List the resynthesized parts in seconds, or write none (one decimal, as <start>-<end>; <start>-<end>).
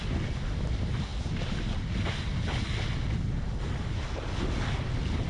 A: none